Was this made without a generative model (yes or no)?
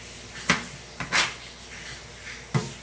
yes